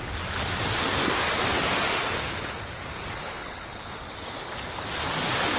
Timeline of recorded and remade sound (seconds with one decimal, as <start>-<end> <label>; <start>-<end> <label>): 0.0-3.2 recorded; 3.2-4.0 remade; 4.0-5.6 recorded